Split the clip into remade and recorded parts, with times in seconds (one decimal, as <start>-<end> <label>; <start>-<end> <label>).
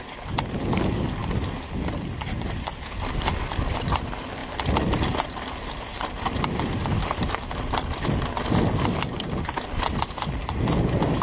0.0-11.2 recorded